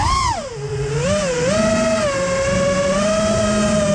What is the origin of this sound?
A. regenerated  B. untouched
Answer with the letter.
B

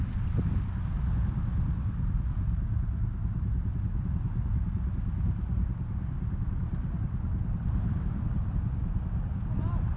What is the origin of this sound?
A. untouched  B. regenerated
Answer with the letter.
A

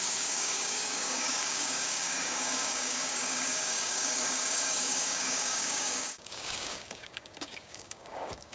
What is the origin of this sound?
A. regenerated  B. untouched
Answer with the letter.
A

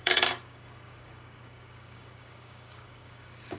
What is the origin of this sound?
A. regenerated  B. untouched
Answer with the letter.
A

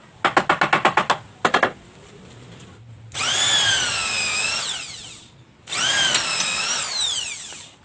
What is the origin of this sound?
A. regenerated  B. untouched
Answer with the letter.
B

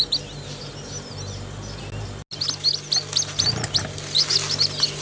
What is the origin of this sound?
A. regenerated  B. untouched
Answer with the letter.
B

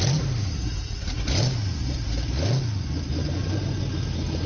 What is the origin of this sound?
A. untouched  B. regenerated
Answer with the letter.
A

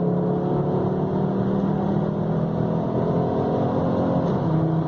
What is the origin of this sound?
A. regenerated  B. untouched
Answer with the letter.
B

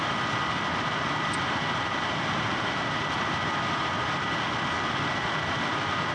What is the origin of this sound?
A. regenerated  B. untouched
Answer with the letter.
B